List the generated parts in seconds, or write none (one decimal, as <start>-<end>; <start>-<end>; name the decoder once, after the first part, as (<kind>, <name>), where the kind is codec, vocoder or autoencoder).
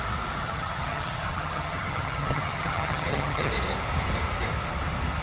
0.4-3.5 (vocoder, HiFi-GAN)